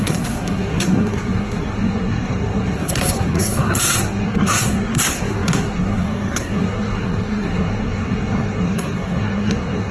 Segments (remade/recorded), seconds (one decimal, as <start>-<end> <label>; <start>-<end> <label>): 0.0-9.9 remade